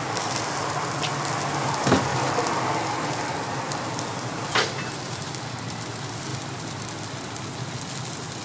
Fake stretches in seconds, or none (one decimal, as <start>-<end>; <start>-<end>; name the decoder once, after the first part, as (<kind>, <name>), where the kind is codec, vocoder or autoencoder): none

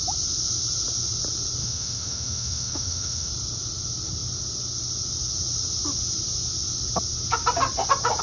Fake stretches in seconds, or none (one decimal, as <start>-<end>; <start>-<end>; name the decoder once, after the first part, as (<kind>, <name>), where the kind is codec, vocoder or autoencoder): 1.6-3.3 (autoencoder, DAC-VAE)

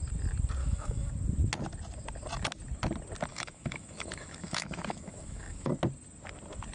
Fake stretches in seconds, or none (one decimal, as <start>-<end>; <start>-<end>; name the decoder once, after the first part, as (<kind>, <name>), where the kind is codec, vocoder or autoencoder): 0.6-1.1 (autoencoder, DAC-VAE); 3.3-5.7

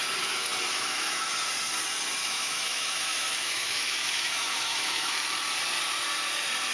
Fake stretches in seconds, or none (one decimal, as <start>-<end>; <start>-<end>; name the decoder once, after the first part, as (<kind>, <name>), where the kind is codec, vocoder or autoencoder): 0.7-1.3 (autoencoder, DAC-VAE); 2.2-5.1

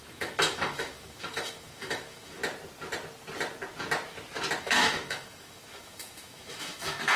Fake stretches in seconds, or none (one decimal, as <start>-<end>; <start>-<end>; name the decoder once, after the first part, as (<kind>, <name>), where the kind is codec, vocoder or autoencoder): 0.0-2.4 (autoencoder, DAC-VAE); 4.6-7.2

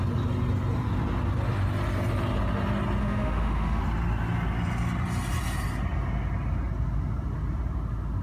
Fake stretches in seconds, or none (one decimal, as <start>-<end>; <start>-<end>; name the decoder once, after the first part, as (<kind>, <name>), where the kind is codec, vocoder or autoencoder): 3.0-3.8 (autoencoder, DAC-VAE)